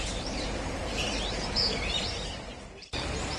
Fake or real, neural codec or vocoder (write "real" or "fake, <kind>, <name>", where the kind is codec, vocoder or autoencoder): fake, vocoder, BigVGAN v2